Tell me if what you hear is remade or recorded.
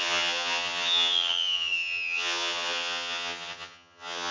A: remade